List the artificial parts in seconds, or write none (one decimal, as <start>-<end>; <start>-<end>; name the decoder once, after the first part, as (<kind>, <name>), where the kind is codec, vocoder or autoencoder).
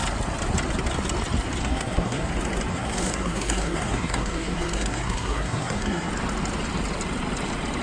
1.6-2.3 (codec, SNAC); 2.7-6.1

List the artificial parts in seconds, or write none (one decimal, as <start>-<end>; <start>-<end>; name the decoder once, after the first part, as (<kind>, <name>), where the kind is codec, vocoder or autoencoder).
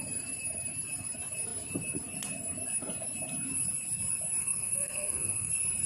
4.4-5.5 (codec, SNAC)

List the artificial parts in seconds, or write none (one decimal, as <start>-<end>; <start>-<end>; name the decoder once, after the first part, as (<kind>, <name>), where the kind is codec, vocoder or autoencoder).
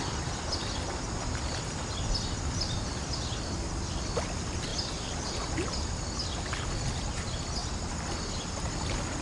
none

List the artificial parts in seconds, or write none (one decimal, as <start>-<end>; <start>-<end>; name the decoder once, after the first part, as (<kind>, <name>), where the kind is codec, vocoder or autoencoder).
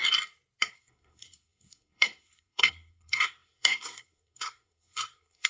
0.7-5.5 (codec, SNAC)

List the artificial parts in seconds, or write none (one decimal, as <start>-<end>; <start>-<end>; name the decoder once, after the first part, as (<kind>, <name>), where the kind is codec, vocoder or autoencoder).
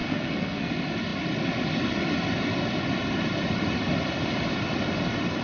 0.0-0.7 (codec, SNAC)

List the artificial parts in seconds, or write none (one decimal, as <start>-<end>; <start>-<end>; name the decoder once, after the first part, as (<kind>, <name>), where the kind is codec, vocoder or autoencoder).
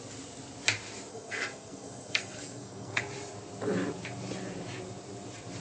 1.1-3.0 (codec, SNAC)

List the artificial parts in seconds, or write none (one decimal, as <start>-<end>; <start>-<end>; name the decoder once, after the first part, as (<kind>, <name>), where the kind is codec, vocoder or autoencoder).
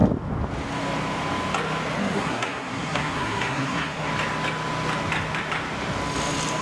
2.0-4.1 (codec, SNAC)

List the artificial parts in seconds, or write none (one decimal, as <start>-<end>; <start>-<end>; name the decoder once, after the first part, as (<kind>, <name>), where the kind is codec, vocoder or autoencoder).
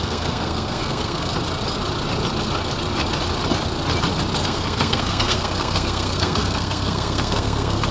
0.0-1.3 (codec, SNAC); 4.4-7.9